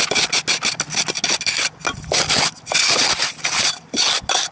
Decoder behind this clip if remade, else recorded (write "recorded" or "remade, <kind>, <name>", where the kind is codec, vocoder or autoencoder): recorded